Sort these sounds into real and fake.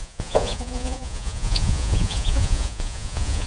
fake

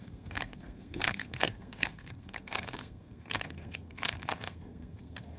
fake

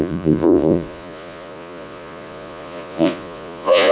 fake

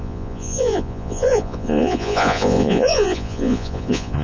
fake